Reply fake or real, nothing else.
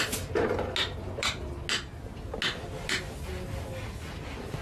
real